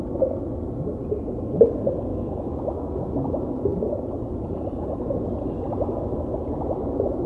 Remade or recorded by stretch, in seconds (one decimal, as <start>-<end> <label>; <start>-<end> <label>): 0.0-2.1 recorded; 2.1-2.9 remade; 2.9-7.3 recorded